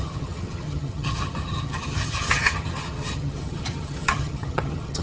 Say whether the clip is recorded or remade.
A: remade